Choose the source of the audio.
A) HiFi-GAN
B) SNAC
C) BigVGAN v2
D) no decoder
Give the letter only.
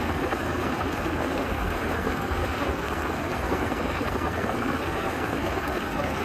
B